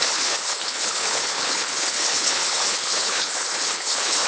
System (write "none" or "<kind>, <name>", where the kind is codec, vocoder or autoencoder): codec, HILCodec